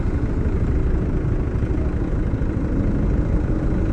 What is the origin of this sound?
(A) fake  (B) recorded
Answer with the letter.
B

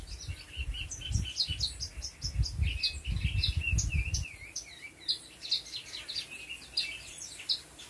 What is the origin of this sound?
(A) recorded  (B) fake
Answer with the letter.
A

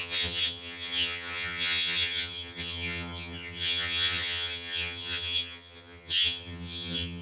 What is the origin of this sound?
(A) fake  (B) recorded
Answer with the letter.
A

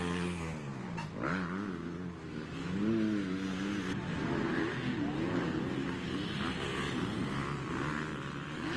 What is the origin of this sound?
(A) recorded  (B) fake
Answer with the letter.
A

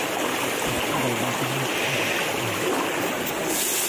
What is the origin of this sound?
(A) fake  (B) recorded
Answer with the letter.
B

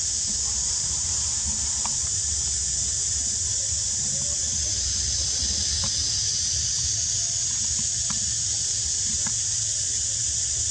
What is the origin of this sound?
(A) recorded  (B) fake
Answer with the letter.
A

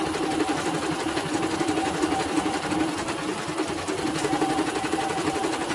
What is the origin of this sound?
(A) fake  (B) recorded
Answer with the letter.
B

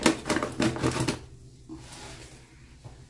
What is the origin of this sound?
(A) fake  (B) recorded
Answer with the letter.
B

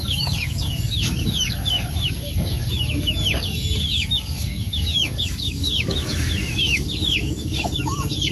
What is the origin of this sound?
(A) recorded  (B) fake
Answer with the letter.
B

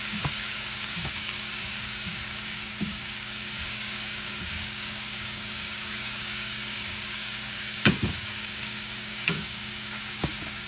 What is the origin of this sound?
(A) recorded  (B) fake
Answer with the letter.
B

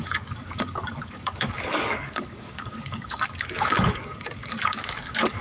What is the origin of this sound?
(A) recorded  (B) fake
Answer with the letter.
B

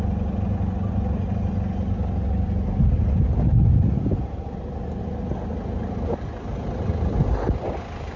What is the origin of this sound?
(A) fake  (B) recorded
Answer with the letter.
B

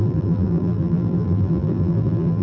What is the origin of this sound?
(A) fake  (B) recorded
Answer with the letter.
A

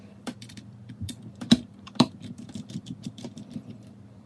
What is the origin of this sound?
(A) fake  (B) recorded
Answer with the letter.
A